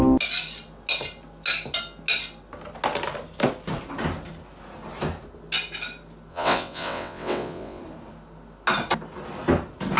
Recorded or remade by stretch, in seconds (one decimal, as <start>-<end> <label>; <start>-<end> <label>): 0.0-6.3 recorded; 6.3-7.8 remade; 7.8-10.0 recorded